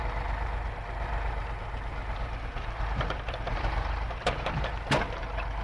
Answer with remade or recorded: remade